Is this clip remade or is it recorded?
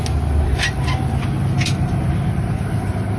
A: recorded